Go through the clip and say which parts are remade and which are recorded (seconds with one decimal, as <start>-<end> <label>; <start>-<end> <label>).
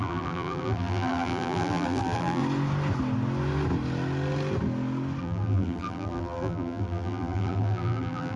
0.0-2.4 remade; 2.4-5.2 recorded; 5.2-8.4 remade